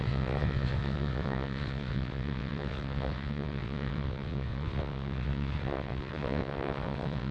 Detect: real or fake fake